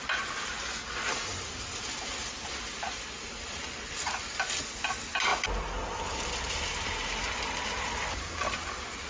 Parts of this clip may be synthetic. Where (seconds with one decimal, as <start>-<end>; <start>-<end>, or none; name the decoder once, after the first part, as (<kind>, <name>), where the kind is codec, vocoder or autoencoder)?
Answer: none